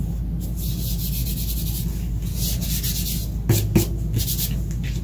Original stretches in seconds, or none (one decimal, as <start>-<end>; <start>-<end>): 0.0-5.0